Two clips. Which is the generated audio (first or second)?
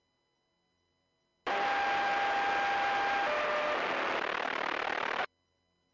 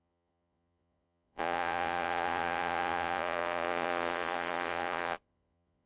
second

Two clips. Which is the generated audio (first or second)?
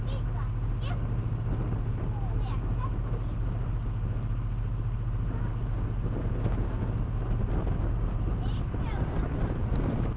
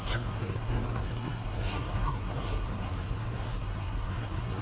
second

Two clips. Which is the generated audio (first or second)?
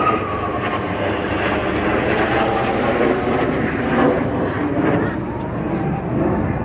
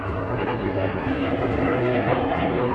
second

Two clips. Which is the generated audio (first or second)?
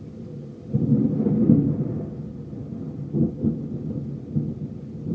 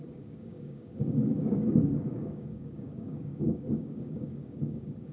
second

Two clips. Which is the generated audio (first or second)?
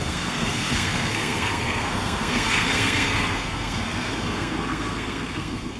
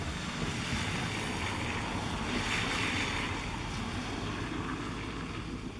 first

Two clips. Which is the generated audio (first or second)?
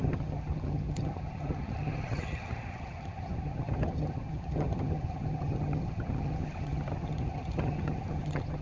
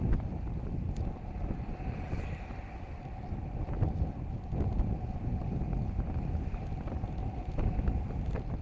first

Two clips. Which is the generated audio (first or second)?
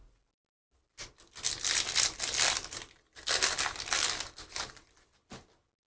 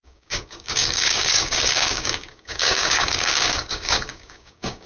second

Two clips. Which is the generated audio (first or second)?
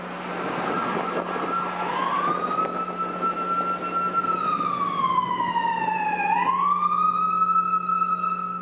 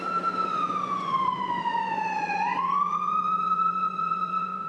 second